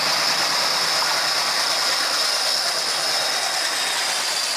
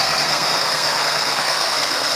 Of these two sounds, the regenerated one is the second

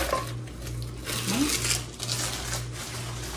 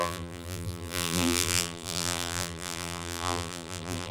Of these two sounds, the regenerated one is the second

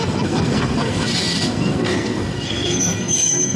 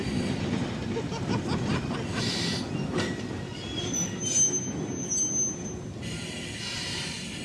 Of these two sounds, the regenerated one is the first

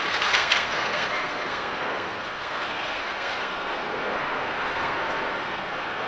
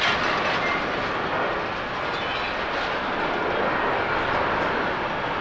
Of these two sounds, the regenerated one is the first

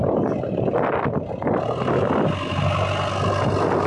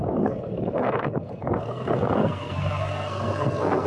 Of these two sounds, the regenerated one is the second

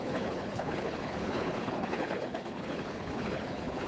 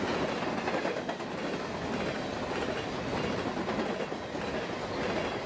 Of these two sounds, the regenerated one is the first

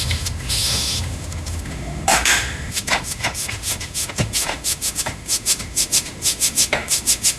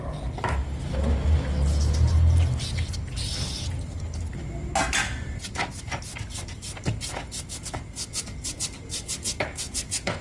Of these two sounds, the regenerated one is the first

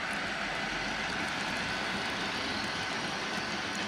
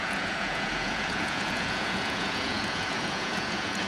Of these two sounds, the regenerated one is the second